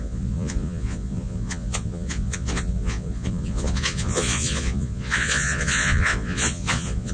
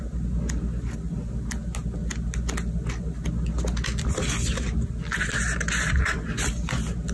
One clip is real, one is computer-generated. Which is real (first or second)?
second